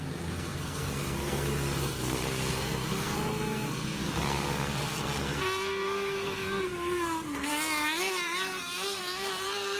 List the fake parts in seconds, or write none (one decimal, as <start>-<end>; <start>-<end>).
0.0-9.8